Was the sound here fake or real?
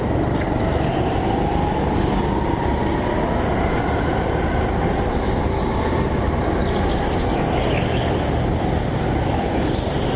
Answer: real